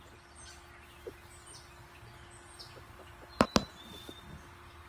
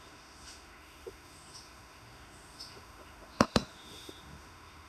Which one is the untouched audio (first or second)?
first